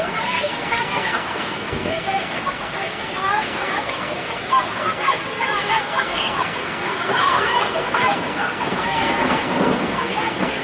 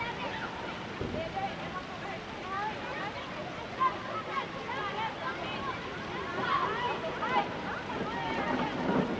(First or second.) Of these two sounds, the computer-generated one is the first